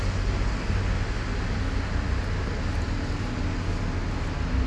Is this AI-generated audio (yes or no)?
no